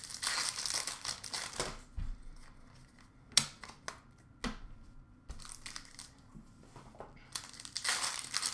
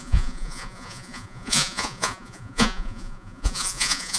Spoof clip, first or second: second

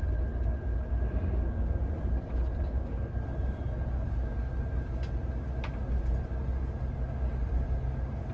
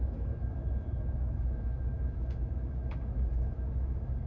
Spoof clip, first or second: second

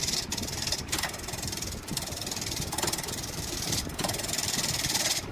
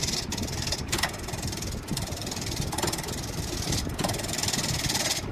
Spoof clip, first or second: first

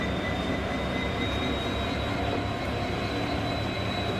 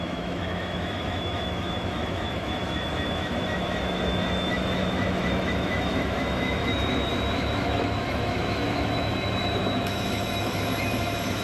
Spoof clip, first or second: second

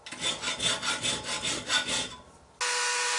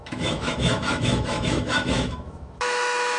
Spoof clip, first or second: second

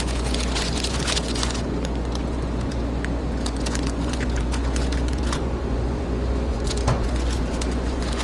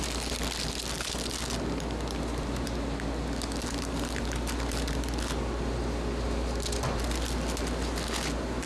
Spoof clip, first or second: first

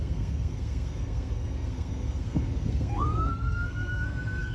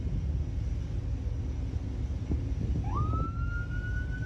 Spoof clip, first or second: first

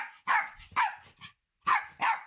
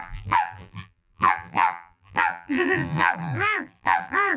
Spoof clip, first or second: second